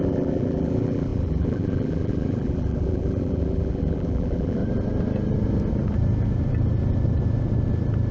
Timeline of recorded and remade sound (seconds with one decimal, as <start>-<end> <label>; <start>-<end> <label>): 0.0-4.6 remade; 4.6-8.1 recorded